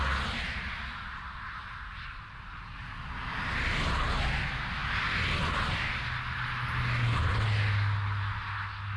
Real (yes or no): yes